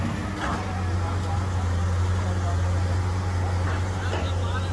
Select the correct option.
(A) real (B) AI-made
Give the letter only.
A